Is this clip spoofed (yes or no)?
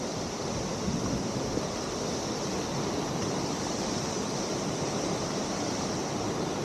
no